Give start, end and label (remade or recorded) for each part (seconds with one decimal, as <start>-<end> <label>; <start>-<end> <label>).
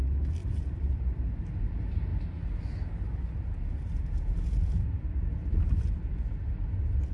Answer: 0.0-7.1 recorded